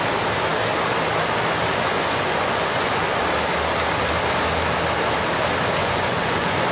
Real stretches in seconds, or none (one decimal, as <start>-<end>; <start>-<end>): 0.0-1.7; 3.2-5.8